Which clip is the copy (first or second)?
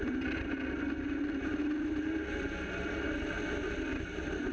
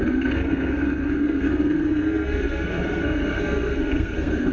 second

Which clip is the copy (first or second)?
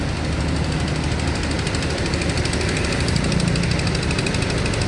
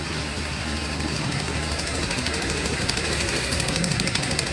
second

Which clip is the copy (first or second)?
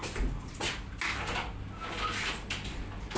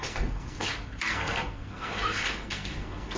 second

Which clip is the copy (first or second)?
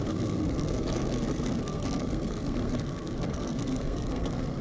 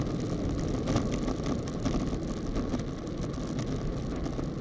first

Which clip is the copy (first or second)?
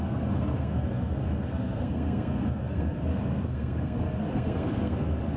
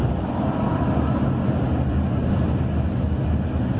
first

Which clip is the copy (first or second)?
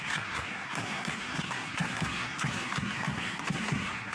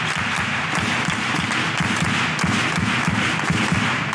first